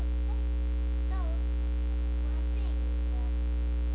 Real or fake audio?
real